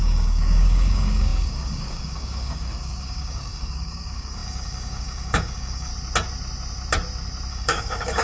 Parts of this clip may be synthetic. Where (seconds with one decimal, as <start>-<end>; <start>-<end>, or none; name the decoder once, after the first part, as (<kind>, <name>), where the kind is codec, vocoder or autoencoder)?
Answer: 0.0-5.9 (codec, DAC); 7.5-8.2